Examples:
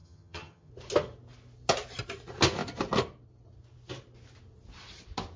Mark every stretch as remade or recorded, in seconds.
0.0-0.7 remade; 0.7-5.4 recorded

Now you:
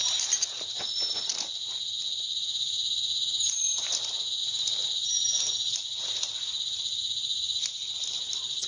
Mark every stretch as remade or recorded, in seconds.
0.0-8.7 recorded